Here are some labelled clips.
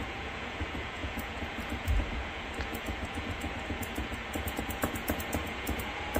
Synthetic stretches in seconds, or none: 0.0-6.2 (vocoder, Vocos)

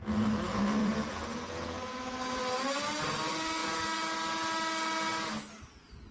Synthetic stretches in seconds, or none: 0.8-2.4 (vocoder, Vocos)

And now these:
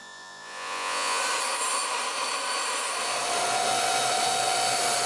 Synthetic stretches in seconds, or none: 0.0-1.2 (vocoder, Vocos)